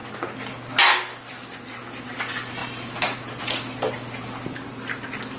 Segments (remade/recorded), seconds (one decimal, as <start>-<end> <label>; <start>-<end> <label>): 0.0-1.1 recorded; 1.1-1.7 remade; 1.7-2.6 recorded; 2.6-3.4 remade; 3.4-5.4 recorded